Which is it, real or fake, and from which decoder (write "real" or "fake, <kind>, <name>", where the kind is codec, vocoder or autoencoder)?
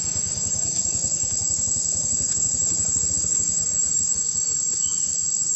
fake, autoencoder, DAC-VAE